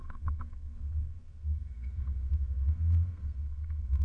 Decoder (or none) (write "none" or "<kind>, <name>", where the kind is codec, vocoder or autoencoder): codec, SNAC